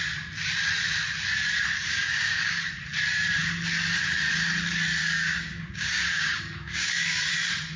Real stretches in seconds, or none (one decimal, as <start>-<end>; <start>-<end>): 0.0-1.9; 2.7-5.0; 7.3-7.8